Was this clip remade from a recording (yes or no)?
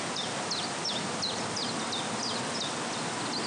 no